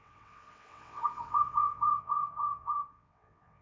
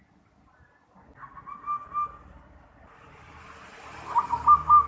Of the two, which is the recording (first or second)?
second